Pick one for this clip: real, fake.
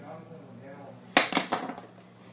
real